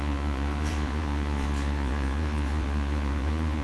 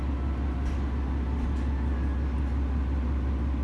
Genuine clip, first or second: second